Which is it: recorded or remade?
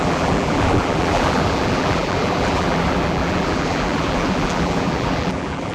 remade